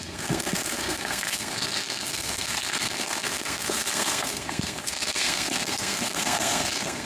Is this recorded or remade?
remade